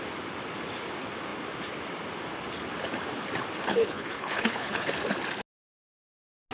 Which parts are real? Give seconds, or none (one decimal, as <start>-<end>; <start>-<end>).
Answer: 0.0-3.7; 4.9-6.5